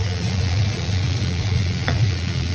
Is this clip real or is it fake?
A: fake